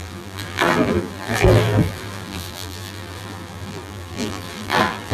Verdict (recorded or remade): remade